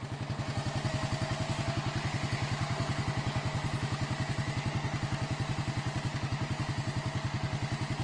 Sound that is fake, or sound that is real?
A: real